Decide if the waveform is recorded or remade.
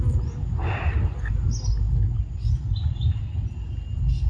recorded